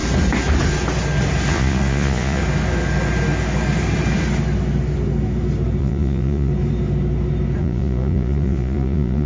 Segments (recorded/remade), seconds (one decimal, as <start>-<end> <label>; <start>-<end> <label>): 0.0-1.5 recorded; 1.5-2.4 remade; 2.4-5.8 recorded; 5.8-6.5 remade; 6.5-7.6 recorded; 7.6-9.3 remade